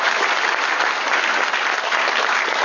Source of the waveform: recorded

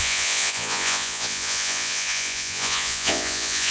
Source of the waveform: remade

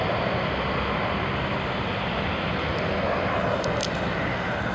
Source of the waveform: recorded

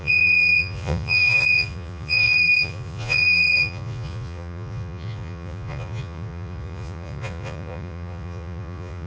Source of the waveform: remade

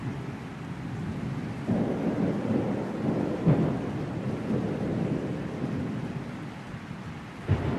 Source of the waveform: remade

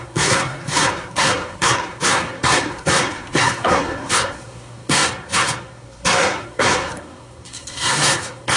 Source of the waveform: remade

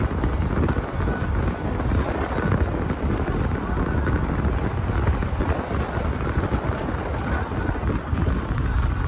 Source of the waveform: recorded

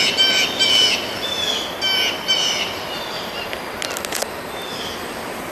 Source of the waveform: recorded